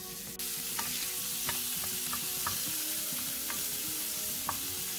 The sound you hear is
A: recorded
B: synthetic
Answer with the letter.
A